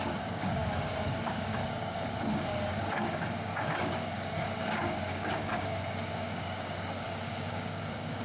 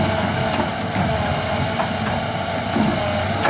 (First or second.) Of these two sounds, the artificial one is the first